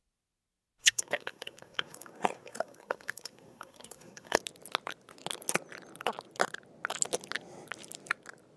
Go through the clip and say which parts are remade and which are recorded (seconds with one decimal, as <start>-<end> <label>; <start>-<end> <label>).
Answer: 0.0-0.8 recorded; 0.8-4.4 remade; 4.4-8.6 recorded